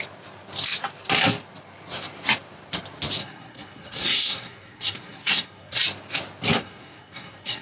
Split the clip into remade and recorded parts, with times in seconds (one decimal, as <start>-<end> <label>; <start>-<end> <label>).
0.0-3.2 recorded; 3.2-5.8 remade; 5.8-6.6 recorded; 6.6-7.6 remade